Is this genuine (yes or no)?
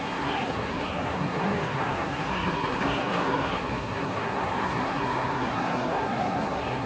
no